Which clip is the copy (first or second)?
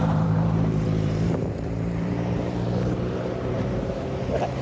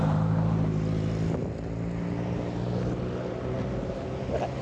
first